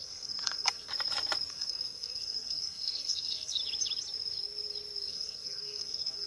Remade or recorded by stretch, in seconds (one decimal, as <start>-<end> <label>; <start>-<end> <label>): 0.0-0.9 remade; 0.9-1.5 recorded; 1.5-3.6 remade; 3.6-5.1 recorded; 5.1-6.3 remade